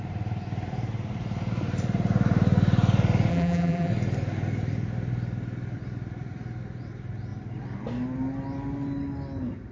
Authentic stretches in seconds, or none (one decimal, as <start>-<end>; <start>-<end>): 0.0-3.3; 3.9-9.7